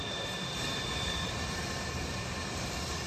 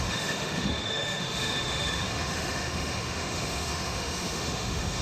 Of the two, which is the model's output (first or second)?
second